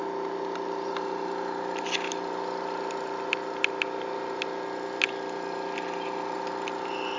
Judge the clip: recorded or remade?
recorded